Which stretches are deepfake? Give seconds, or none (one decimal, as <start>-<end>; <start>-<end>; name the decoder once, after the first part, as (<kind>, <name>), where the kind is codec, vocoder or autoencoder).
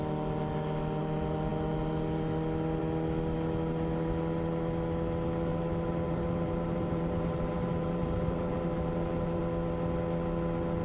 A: 5.5-9.4 (vocoder, BigVGAN v2)